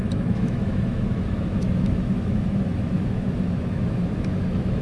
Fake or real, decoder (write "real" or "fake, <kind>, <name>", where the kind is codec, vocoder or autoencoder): fake, autoencoder, DAC-VAE